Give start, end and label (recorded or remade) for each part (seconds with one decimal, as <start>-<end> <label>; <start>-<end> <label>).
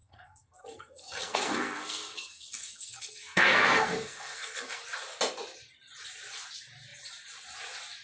0.0-4.8 remade; 4.8-8.0 recorded